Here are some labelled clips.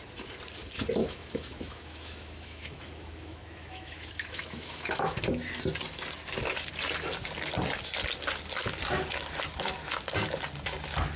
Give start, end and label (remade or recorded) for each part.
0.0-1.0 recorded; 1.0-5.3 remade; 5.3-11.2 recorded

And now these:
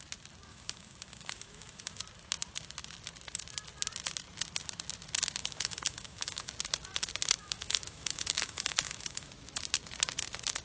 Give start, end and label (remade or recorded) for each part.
0.0-0.5 recorded; 0.5-2.0 remade; 2.0-5.4 recorded; 5.4-6.5 remade; 6.5-7.4 recorded; 7.4-9.3 remade; 9.3-10.6 recorded